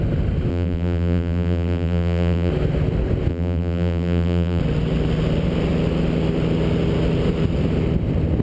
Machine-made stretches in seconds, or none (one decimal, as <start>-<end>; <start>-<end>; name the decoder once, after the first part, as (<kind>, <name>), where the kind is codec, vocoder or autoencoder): 0.5-2.5 (vocoder, BigVGAN v2); 3.3-4.6